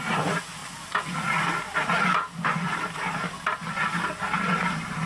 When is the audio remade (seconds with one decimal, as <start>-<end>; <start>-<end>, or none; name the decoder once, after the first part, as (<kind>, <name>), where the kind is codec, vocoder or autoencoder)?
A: none